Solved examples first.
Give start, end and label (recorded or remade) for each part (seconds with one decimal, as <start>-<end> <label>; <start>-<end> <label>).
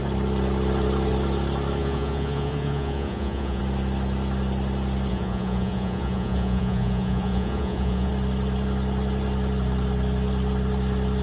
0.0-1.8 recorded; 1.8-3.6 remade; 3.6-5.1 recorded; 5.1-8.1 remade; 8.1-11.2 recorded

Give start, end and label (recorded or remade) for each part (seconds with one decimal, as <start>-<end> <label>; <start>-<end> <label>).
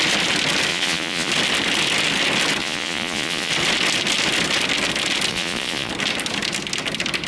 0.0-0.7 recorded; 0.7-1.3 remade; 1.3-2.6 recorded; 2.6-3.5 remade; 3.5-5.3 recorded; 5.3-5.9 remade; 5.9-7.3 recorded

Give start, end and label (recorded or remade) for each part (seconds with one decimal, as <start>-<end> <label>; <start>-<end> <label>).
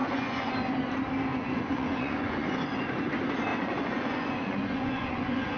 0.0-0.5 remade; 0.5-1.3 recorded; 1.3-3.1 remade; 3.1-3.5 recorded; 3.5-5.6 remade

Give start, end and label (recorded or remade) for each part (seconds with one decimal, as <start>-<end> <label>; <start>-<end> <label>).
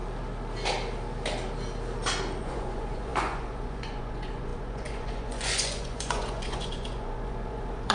0.0-2.4 recorded; 2.4-7.9 remade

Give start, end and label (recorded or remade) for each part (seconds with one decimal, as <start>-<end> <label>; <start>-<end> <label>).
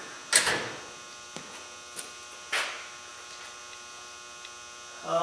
0.0-5.2 recorded